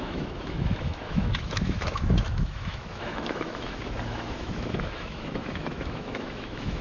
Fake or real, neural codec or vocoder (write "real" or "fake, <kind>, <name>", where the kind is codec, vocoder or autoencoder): fake, autoencoder, DAC-VAE